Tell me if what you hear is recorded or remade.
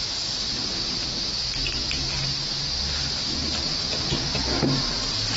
recorded